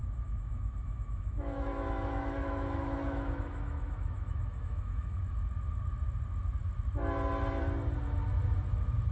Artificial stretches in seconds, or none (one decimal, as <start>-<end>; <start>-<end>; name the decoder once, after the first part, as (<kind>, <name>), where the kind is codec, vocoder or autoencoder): 0.0-5.2 (autoencoder, DAC-VAE)